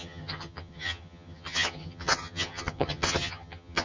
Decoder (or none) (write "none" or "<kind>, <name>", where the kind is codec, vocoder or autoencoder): vocoder, HiFi-GAN